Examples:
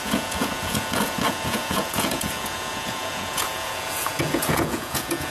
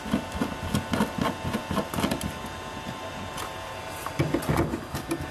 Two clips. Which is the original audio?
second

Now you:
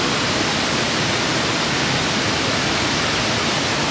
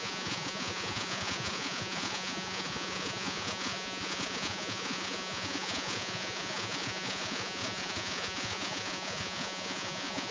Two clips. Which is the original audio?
first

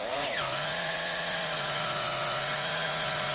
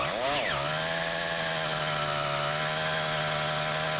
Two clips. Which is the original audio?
second